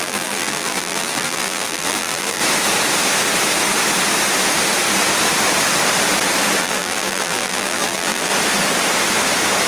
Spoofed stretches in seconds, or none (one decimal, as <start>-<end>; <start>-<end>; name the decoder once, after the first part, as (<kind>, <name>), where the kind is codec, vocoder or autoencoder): 0.0-2.4 (vocoder, BigVGAN v2); 6.6-8.3